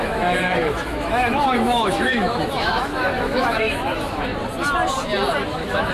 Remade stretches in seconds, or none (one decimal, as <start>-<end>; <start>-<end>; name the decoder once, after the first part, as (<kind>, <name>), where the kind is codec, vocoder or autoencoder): 0.0-4.3 (autoencoder, DAC-VAE); 5.5-5.9